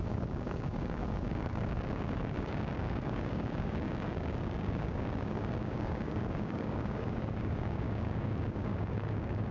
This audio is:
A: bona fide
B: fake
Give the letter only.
B